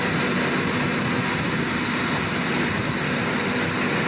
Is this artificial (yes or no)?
no